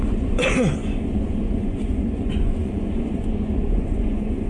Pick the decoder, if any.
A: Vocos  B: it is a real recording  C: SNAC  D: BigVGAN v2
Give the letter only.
A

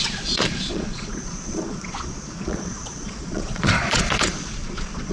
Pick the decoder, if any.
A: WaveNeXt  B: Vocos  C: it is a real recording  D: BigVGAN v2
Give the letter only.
B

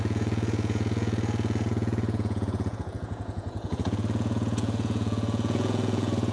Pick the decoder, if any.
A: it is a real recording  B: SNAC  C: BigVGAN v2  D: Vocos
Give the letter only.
D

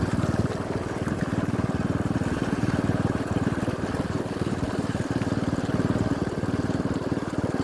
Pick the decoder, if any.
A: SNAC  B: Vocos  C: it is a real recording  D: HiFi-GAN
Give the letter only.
C